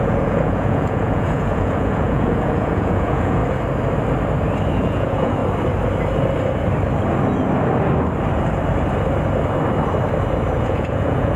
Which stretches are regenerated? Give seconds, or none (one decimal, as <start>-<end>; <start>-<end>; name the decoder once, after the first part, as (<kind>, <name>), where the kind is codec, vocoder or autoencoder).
0.0-3.4 (vocoder, Vocos); 4.7-5.4; 10.6-11.4